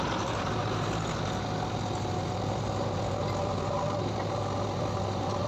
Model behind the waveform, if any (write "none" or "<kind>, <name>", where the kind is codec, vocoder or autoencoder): none